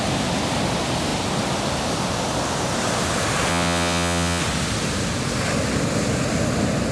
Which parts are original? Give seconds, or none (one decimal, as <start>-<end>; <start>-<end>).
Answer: 0.0-3.5; 4.4-6.9